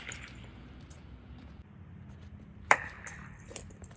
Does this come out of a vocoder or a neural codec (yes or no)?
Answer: yes